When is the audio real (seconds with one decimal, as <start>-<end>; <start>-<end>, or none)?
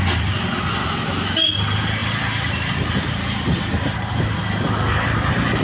0.0-0.8; 1.5-5.6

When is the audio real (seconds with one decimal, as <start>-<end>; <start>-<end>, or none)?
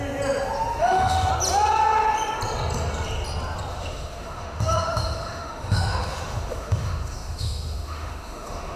0.0-0.8; 1.3-3.7